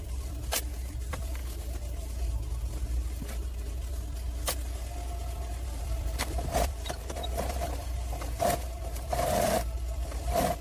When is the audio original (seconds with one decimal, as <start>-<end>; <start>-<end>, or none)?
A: 1.4-5.8